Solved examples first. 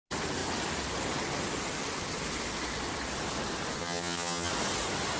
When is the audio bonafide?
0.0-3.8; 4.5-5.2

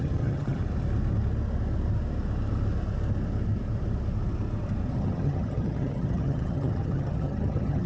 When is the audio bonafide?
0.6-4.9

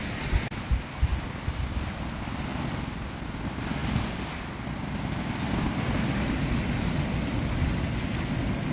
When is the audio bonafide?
0.0-8.7

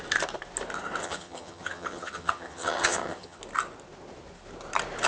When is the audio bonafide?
0.0-1.0; 3.4-5.1